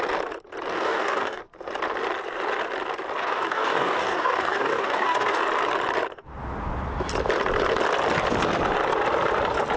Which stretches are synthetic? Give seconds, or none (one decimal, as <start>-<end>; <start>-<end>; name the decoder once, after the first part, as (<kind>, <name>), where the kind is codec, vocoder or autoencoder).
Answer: 0.7-1.4 (codec, DAC); 3.2-5.4